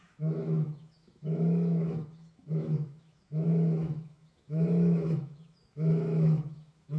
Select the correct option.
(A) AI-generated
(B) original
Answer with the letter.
A